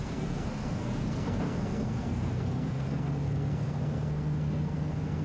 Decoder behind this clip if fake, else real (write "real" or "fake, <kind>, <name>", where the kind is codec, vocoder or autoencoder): fake, codec, SNAC